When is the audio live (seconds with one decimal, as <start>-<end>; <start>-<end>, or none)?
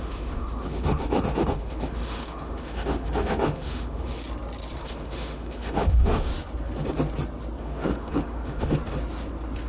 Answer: 4.2-4.8; 6.3-7.6; 8.8-9.7